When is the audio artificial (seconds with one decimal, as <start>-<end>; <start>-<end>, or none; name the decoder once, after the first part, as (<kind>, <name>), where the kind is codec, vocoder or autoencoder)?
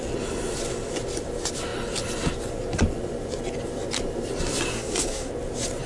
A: 4.7-5.3 (codec, SNAC)